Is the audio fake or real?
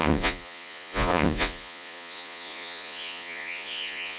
fake